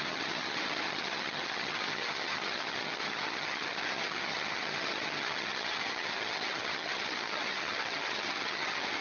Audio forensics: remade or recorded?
remade